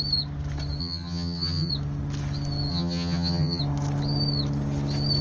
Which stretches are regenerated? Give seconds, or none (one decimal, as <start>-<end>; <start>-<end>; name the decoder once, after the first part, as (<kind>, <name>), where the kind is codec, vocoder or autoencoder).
0.8-1.7 (vocoder, HiFi-GAN); 2.7-3.6